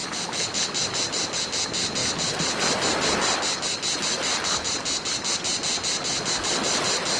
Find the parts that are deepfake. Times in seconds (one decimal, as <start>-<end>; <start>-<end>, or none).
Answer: none